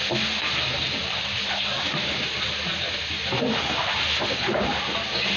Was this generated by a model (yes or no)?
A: no